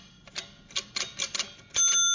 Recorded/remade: recorded